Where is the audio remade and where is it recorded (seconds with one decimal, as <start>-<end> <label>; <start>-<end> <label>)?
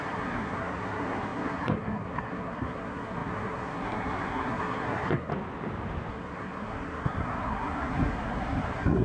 0.0-5.3 remade; 5.3-6.1 recorded; 6.1-9.0 remade